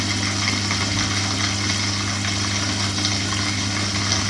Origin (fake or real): real